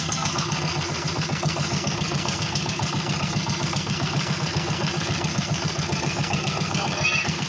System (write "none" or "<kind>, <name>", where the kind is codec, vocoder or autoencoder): codec, SNAC